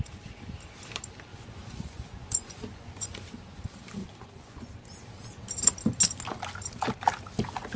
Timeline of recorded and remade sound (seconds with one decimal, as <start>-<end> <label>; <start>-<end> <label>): 0.0-1.3 recorded; 1.3-3.1 remade; 3.1-4.0 recorded; 4.0-4.7 remade; 4.7-7.8 recorded